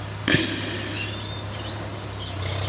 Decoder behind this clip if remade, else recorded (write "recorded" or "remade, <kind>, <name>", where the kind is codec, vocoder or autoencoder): recorded